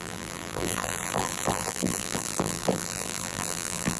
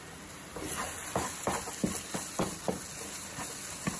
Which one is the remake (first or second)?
first